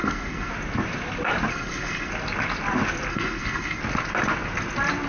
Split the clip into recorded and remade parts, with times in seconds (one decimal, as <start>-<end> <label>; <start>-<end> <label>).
0.0-0.5 remade; 0.5-1.5 recorded; 1.5-2.1 remade; 2.1-3.1 recorded; 3.1-3.8 remade; 3.8-5.1 recorded